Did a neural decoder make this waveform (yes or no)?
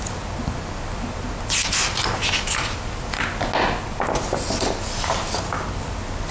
no